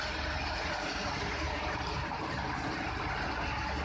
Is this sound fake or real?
real